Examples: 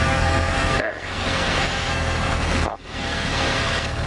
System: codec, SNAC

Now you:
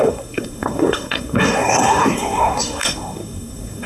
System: codec, SNAC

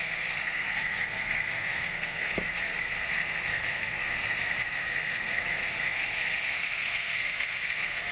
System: codec, SNAC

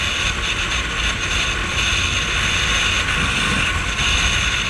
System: none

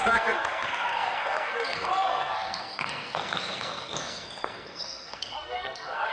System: codec, SNAC